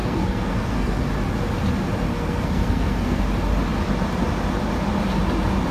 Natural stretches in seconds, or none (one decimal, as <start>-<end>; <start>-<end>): 1.0-2.1; 3.2-5.7